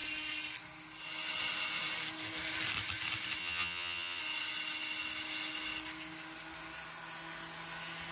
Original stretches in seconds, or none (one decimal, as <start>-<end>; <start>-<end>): 0.0-3.4; 4.2-8.1